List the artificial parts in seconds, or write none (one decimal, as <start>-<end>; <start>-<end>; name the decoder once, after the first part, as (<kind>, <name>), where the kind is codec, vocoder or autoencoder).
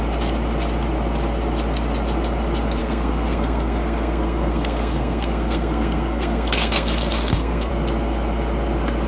2.8-7.7 (codec, SNAC)